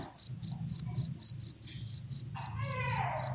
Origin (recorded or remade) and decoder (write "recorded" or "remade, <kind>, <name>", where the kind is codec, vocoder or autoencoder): recorded